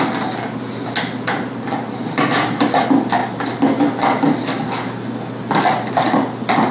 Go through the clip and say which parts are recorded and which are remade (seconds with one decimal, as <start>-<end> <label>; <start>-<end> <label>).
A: 0.0-6.7 recorded